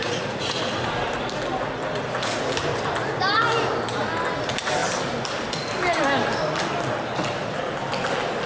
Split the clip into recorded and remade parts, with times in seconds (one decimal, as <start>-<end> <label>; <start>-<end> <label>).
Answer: 0.0-0.6 remade; 0.6-8.5 recorded